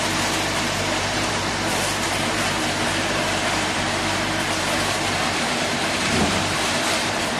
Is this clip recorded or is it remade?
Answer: remade